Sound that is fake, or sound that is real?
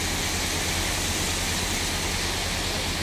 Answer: real